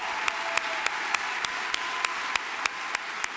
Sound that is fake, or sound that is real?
real